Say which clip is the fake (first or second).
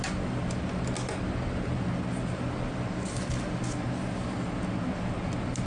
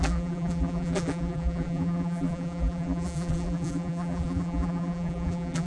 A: second